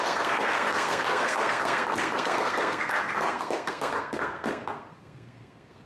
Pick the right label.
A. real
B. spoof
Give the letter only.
B